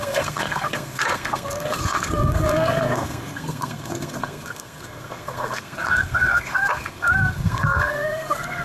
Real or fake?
fake